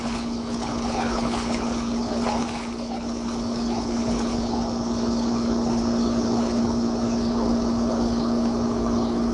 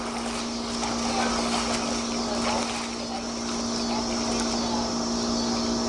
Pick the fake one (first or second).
first